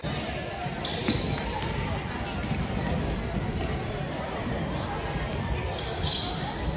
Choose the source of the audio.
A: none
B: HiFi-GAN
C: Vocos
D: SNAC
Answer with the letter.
A